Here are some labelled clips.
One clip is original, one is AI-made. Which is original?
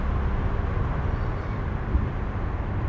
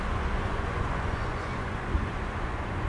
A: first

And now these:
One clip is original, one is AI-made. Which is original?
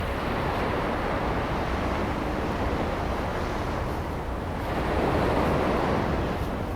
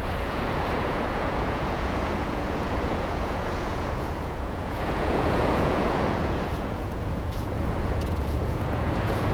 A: first